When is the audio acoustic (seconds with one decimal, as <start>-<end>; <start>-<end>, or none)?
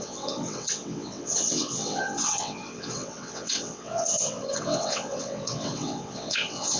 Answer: none